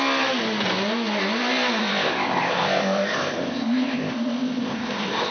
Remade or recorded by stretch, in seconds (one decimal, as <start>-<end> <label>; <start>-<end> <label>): 0.0-1.8 recorded; 1.8-5.3 remade